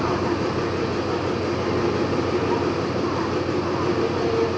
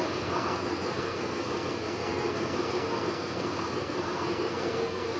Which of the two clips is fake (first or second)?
second